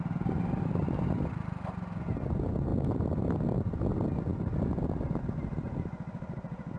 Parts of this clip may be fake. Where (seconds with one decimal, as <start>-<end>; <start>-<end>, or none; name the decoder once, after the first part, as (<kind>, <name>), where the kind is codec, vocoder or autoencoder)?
none